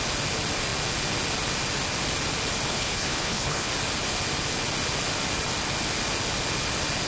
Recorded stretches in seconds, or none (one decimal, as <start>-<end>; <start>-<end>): 0.0-2.7; 3.7-7.1